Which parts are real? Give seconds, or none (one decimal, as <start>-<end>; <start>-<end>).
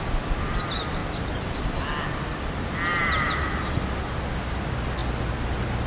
0.0-1.0; 1.7-2.9; 3.8-5.9